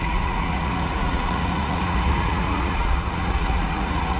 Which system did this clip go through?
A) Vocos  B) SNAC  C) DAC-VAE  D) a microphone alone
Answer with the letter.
A